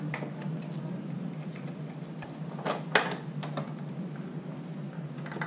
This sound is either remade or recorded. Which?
recorded